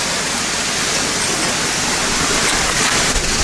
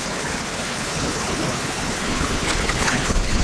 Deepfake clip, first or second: second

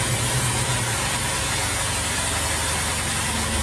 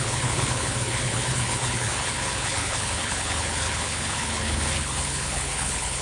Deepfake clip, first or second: second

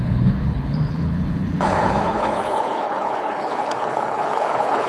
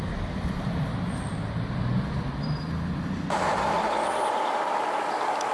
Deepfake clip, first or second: first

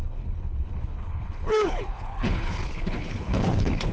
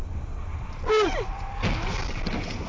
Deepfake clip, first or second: first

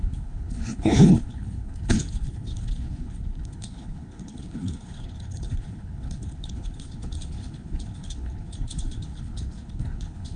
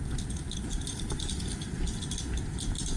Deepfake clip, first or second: first